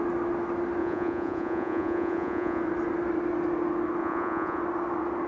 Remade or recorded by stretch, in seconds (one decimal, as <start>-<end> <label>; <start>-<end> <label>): 0.0-0.8 recorded; 0.8-2.6 remade; 2.6-4.0 recorded; 4.0-4.6 remade; 4.6-5.3 recorded

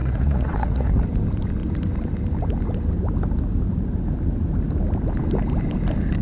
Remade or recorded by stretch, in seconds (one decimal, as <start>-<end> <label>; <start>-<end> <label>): 0.0-1.0 remade; 1.0-6.2 recorded

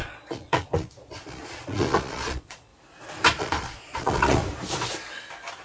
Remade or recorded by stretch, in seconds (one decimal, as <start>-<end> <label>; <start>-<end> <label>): 0.0-2.7 remade; 2.7-3.4 recorded; 3.4-4.4 remade; 4.4-5.6 recorded

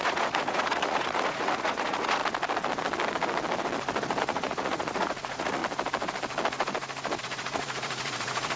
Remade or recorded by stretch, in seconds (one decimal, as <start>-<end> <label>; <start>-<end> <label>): 0.0-2.2 remade; 2.2-4.2 recorded; 4.2-5.6 remade; 5.6-7.2 recorded; 7.2-8.6 remade